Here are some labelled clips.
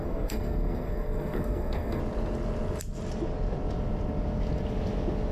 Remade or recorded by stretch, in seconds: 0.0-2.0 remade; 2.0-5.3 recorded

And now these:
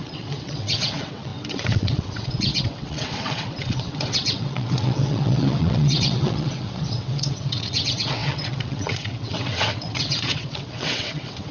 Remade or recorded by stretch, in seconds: 0.0-11.5 remade

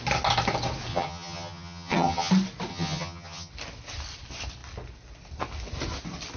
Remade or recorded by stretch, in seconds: 0.0-0.9 recorded; 0.9-2.3 remade; 2.3-2.7 recorded; 2.7-3.5 remade; 3.5-6.4 recorded